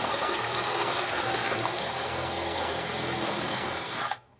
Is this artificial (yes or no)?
yes